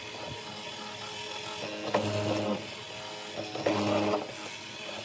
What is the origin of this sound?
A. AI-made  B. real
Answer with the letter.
B